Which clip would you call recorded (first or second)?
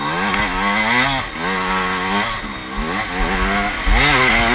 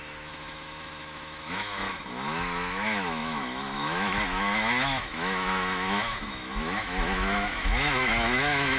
first